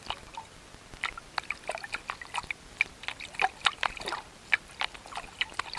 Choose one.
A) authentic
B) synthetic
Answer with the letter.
A